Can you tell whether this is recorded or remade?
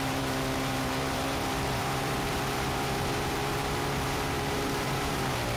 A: remade